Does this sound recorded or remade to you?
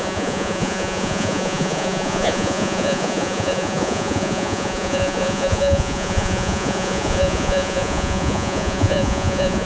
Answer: remade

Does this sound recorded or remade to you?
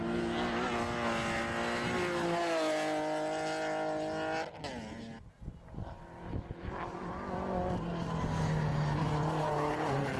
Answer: recorded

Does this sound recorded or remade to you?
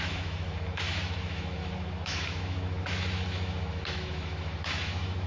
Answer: remade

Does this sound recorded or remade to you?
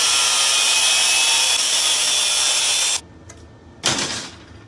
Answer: recorded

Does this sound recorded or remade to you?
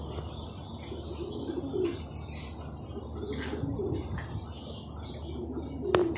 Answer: recorded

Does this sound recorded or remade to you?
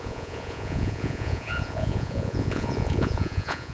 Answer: remade